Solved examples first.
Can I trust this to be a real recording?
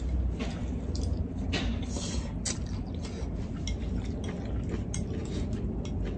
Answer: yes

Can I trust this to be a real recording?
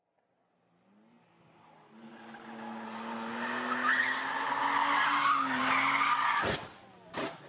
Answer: yes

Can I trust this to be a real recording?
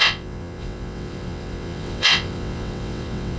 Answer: no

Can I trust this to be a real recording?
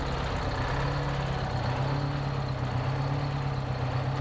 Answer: yes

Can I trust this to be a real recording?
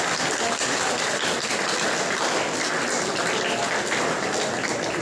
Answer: yes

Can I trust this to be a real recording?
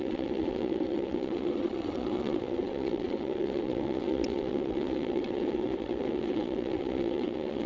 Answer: no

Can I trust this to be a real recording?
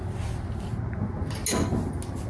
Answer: yes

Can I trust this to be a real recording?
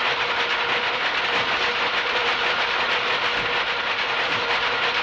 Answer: yes